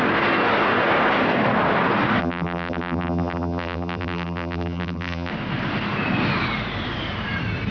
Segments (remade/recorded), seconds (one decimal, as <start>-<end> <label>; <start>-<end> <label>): 0.0-2.2 recorded; 2.2-5.3 remade; 5.3-7.7 recorded